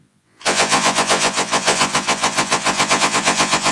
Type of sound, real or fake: fake